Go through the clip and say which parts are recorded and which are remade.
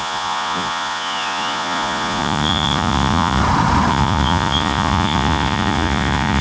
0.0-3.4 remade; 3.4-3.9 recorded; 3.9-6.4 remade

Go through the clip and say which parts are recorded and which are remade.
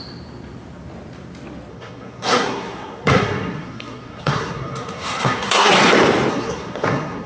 0.0-1.7 recorded; 1.7-5.7 remade; 5.7-6.3 recorded; 6.3-7.3 remade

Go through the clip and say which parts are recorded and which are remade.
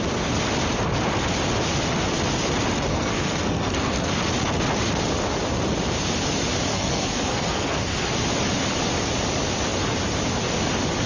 0.0-2.9 recorded; 2.9-4.1 remade; 4.1-6.7 recorded; 6.7-8.1 remade; 8.1-11.1 recorded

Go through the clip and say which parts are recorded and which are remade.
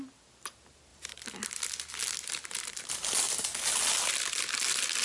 0.0-5.0 recorded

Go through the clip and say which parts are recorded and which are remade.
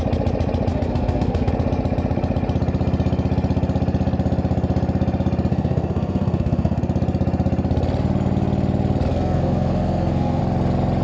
0.0-0.7 recorded; 0.7-1.5 remade; 1.5-5.5 recorded; 5.5-6.8 remade; 6.8-9.1 recorded; 9.1-10.4 remade; 10.4-11.0 recorded